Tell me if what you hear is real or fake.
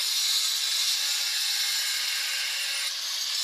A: real